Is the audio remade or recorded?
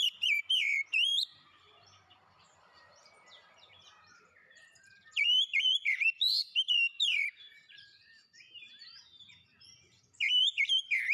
remade